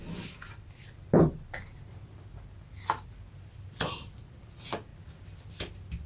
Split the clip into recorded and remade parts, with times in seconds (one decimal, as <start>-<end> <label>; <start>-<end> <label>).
0.0-6.1 recorded